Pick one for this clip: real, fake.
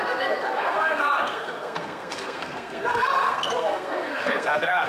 fake